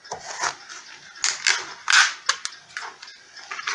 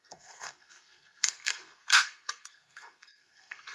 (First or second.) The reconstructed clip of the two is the second